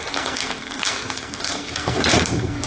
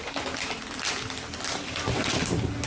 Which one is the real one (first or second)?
second